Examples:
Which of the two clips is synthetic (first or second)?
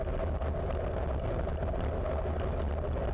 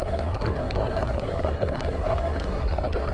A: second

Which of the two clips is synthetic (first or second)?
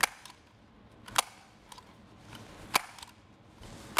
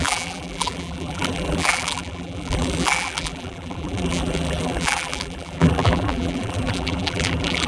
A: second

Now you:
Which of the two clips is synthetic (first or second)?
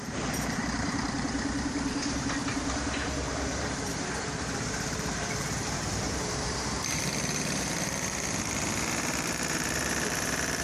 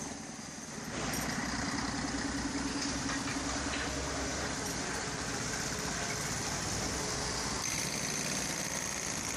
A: first